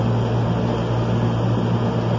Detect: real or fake real